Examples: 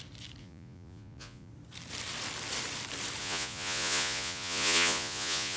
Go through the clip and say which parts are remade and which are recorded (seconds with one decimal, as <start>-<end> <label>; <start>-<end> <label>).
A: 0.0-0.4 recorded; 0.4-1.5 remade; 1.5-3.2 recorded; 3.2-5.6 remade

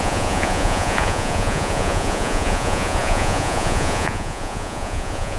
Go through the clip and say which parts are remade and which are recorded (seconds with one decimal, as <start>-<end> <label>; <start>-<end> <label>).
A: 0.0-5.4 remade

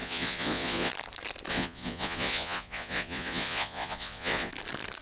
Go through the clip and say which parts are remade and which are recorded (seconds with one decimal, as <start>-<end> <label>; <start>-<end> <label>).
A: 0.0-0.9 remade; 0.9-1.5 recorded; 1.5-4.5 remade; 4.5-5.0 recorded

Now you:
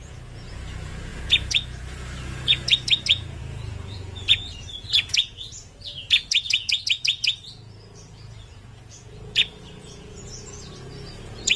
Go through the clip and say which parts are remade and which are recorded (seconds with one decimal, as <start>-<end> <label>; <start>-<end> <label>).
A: 0.0-11.6 remade

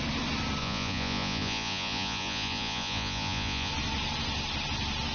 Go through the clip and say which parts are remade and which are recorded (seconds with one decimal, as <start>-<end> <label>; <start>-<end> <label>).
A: 0.0-0.6 recorded; 0.6-3.7 remade; 3.7-5.1 recorded

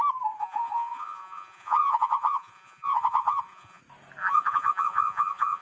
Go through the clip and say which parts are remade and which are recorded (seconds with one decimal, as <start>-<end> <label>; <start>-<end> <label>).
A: 0.0-0.4 recorded; 0.4-3.8 remade; 3.8-4.2 recorded; 4.2-5.6 remade

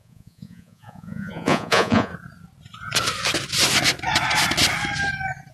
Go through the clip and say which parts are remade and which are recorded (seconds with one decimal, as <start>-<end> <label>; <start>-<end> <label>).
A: 0.0-2.1 remade; 2.1-5.5 recorded